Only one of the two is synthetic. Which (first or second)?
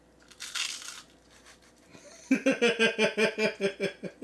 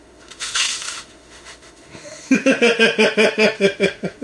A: second